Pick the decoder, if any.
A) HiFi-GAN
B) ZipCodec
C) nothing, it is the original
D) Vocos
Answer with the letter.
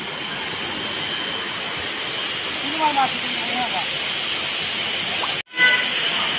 C